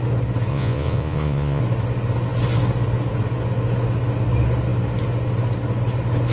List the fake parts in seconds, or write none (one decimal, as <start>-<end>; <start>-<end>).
0.5-1.6